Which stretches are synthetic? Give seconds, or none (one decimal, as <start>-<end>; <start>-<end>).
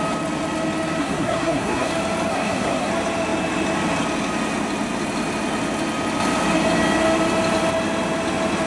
1.0-1.9; 2.3-2.9